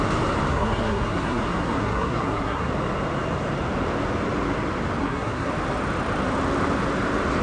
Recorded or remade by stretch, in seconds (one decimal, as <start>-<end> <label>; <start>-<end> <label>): 0.0-0.5 recorded; 0.5-2.7 remade; 2.7-5.0 recorded; 5.0-5.5 remade; 5.5-7.4 recorded